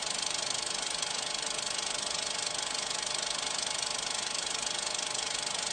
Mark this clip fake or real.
real